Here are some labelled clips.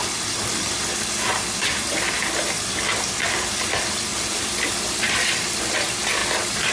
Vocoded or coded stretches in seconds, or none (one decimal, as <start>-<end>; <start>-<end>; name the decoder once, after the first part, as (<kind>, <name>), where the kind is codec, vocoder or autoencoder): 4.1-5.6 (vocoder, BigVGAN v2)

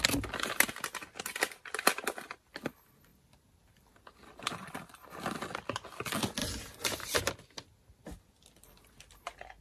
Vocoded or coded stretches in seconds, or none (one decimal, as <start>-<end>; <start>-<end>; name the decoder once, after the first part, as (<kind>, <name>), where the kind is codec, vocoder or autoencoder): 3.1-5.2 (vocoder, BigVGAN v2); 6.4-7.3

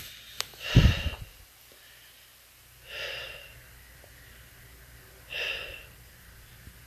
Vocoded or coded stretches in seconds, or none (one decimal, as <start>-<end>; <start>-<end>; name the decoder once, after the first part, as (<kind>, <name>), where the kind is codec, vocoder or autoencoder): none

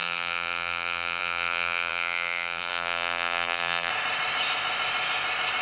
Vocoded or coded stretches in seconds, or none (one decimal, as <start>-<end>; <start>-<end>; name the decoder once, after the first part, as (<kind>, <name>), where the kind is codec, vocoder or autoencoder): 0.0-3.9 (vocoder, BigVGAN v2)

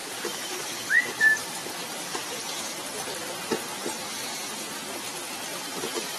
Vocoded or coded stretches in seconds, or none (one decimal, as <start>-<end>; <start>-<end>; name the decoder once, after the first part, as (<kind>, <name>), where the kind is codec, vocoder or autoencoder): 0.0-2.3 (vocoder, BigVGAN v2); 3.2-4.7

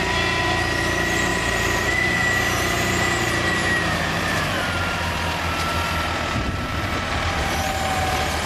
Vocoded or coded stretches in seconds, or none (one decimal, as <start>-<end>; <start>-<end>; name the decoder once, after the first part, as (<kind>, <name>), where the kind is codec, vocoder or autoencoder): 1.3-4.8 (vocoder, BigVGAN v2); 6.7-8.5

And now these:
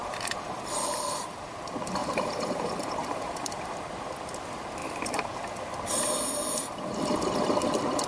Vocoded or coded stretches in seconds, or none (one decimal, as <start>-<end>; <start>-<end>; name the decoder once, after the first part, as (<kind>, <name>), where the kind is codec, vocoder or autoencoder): 0.0-1.2 (vocoder, BigVGAN v2); 2.0-3.3; 4.8-5.3

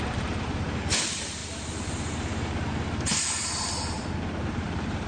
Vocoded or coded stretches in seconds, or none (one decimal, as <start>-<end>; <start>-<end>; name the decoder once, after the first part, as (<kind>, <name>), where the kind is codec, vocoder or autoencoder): 0.0-1.4 (vocoder, BigVGAN v2); 4.5-5.1